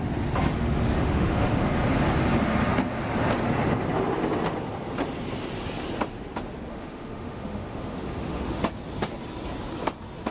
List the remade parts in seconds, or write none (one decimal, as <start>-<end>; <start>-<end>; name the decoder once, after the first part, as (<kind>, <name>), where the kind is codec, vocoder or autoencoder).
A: 0.5-1.5 (autoencoder, DAC-VAE); 6.7-8.6